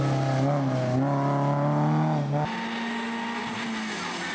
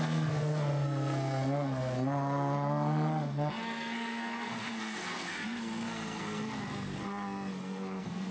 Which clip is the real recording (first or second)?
first